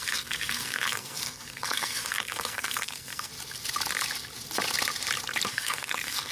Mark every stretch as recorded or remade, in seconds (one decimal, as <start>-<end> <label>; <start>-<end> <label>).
0.0-3.3 remade; 3.3-5.5 recorded; 5.5-6.3 remade